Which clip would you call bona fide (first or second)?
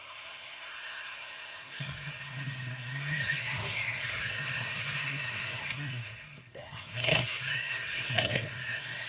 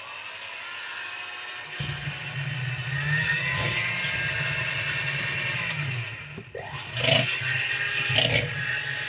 second